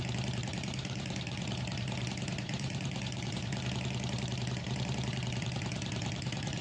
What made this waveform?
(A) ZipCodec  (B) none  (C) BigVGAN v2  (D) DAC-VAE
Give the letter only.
C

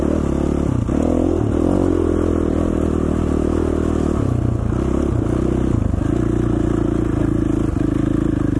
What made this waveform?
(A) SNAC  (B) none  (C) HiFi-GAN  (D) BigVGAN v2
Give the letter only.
B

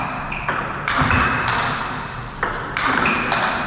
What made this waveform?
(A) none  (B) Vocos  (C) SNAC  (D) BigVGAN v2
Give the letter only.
A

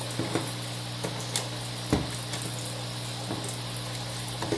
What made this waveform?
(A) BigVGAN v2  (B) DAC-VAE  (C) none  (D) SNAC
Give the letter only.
C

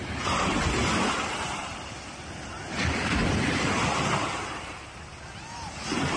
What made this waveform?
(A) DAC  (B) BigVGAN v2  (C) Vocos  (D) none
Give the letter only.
D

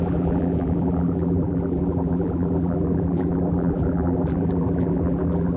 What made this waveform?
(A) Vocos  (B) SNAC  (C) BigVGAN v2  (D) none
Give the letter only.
C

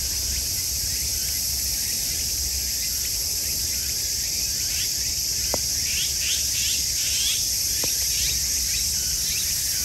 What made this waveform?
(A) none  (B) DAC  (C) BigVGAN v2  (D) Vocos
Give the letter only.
A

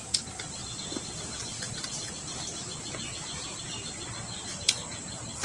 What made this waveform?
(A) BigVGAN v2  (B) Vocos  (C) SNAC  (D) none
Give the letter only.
D